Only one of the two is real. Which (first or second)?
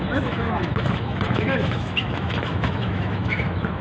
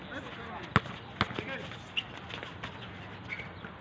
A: second